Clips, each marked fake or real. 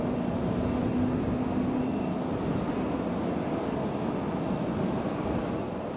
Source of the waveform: real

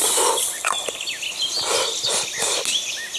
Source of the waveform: real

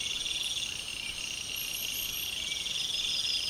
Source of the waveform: real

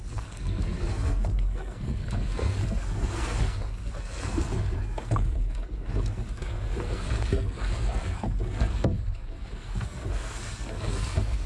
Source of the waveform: fake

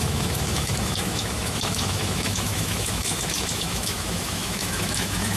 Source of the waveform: fake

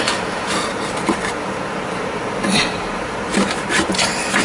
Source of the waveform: fake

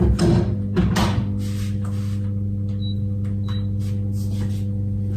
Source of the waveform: real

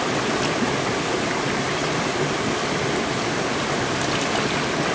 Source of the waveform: real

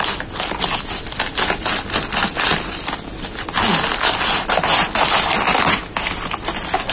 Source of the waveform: real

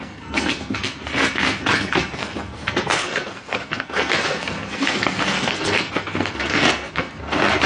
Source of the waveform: fake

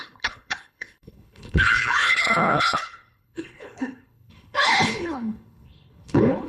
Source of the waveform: fake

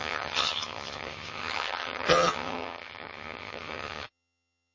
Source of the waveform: fake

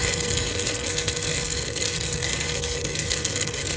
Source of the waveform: fake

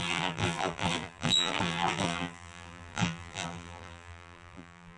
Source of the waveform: fake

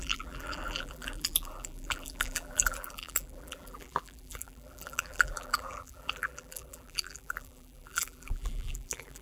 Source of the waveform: fake